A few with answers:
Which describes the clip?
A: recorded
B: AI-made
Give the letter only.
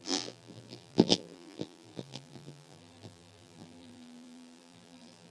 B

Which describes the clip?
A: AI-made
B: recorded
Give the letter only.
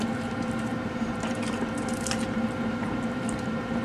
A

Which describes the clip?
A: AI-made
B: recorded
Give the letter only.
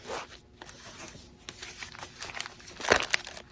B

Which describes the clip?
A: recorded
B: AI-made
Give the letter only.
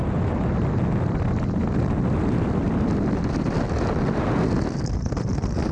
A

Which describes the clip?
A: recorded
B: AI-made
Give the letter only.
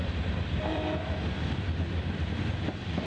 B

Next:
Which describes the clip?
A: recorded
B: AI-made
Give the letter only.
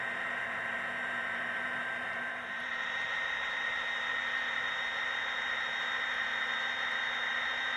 B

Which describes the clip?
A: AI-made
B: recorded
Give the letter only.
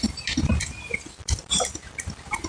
A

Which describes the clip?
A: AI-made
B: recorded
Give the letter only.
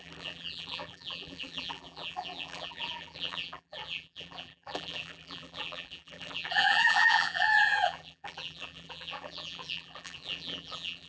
A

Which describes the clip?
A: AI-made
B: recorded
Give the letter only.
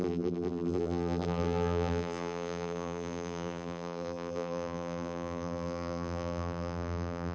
A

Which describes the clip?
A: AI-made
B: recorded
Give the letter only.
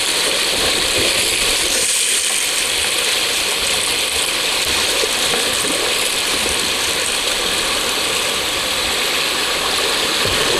B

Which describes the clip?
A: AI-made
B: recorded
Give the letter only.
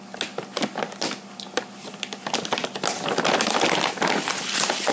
B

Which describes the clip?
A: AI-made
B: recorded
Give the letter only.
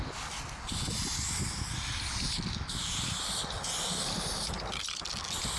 B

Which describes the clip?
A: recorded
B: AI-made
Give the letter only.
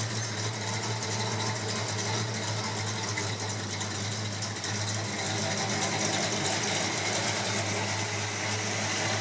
A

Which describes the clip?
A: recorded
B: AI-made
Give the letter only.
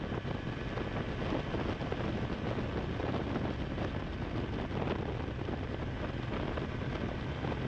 A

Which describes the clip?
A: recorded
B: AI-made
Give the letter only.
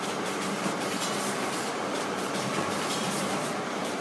B